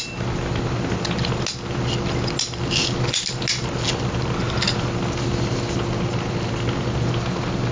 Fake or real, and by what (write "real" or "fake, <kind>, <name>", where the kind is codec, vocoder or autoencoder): real